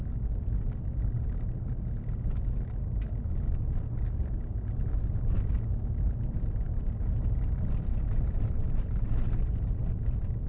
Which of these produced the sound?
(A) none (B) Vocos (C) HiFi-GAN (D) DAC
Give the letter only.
A